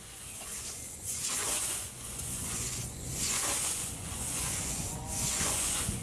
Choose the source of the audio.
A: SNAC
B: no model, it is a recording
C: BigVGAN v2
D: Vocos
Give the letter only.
D